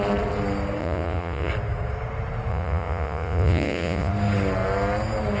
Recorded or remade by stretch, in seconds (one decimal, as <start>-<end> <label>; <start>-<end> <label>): 0.0-0.8 recorded; 0.8-1.5 remade; 1.5-2.5 recorded; 2.5-4.1 remade; 4.1-5.4 recorded